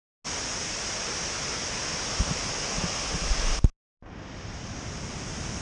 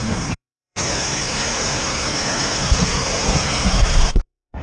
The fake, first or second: second